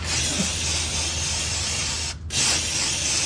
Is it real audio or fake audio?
real